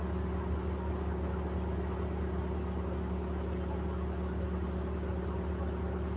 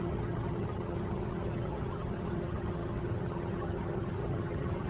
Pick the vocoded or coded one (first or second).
second